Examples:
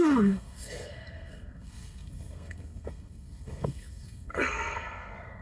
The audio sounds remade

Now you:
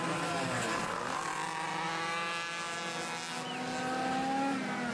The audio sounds recorded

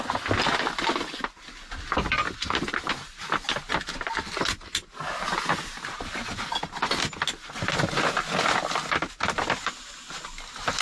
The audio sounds recorded